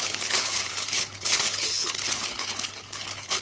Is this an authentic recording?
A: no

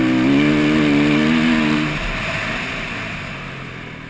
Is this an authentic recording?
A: yes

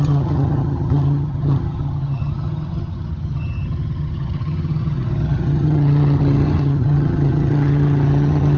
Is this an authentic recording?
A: no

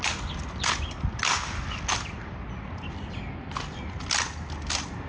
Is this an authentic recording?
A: yes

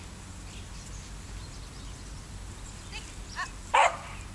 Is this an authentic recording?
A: yes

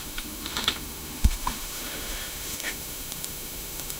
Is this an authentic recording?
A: no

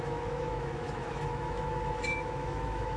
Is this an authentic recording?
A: no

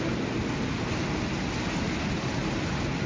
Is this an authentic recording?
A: yes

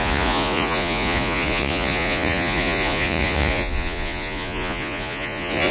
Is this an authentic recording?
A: no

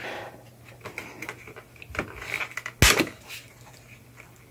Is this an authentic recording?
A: yes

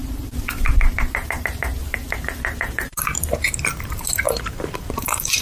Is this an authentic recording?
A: no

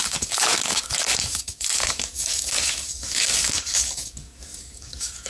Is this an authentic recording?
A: no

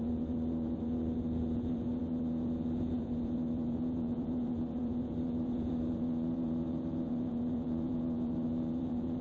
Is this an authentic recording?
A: no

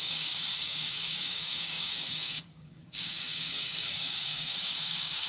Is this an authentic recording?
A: no